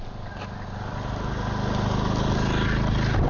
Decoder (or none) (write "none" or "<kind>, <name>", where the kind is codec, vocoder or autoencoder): none